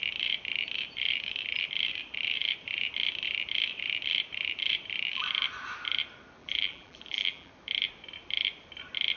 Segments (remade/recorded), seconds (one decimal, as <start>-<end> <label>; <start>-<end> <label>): 0.0-6.4 recorded; 6.4-7.5 remade; 7.5-9.2 recorded

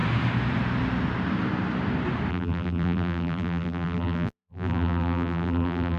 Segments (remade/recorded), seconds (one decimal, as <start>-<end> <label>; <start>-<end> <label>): 0.0-2.3 recorded; 2.3-6.0 remade

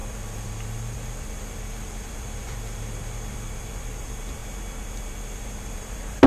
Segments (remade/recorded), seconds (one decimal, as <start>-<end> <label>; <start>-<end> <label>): 0.0-4.4 remade; 4.4-5.4 recorded; 5.4-6.3 remade

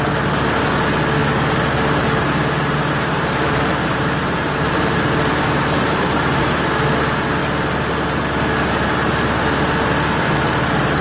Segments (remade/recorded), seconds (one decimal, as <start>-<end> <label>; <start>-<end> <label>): 0.0-1.2 recorded; 1.2-6.4 remade; 6.4-11.0 recorded